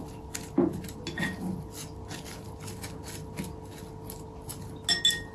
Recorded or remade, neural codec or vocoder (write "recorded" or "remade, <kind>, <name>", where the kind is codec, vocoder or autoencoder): recorded